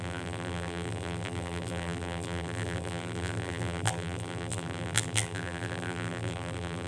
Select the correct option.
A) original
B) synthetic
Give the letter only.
B